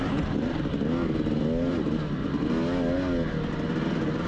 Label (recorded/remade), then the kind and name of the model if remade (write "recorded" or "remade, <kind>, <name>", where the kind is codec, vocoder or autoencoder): recorded